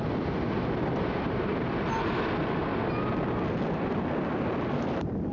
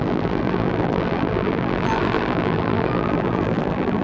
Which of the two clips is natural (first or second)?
first